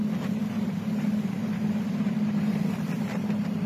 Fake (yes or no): no